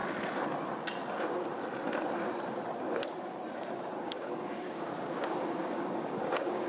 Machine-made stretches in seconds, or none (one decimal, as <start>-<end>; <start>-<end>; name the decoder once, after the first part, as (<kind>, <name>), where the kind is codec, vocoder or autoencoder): 4.0-6.7 (codec, DAC)

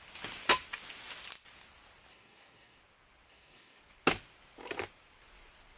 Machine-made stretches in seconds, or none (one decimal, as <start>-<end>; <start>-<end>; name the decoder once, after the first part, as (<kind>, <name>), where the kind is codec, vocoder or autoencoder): 2.1-2.8 (codec, DAC); 3.3-3.8

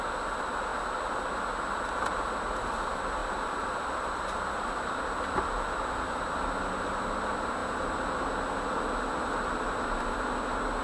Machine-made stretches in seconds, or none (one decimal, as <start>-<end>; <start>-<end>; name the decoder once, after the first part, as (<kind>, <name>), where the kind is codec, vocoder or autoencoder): none

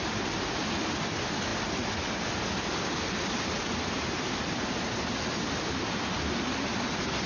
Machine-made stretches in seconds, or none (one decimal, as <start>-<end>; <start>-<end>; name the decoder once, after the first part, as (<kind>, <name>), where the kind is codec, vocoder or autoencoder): none

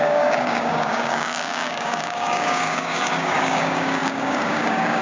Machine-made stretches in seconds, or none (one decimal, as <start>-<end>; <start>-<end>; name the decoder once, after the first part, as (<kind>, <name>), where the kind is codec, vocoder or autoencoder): 0.0-5.0 (codec, DAC)